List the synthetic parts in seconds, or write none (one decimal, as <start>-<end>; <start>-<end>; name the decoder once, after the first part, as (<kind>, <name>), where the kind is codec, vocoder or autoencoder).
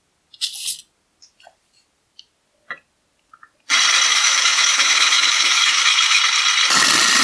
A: 4.1-6.2 (autoencoder, DAC-VAE)